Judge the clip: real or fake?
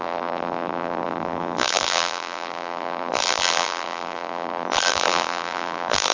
fake